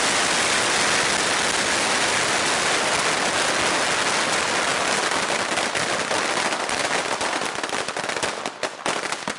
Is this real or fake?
real